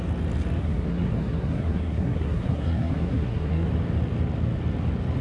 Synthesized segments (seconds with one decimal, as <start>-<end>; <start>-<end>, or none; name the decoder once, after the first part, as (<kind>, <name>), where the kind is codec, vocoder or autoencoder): 0.6-3.7 (codec, SNAC)